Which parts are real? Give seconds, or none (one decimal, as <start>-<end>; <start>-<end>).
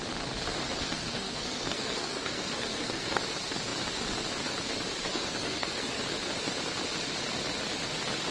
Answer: 0.0-0.8; 3.2-5.1; 6.0-8.3